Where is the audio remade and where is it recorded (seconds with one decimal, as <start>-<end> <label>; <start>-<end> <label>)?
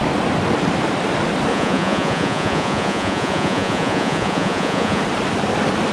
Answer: 0.0-1.5 recorded; 1.5-5.0 remade; 5.0-5.9 recorded